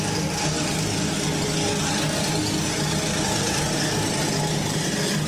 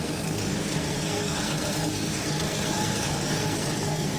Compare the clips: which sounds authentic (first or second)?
first